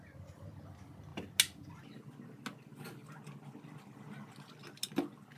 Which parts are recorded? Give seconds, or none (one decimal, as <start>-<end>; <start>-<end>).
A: 0.0-5.4